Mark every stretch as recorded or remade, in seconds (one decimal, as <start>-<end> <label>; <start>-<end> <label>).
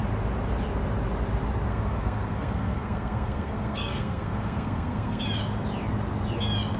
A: 0.0-1.7 recorded; 1.7-5.2 remade; 5.2-6.8 recorded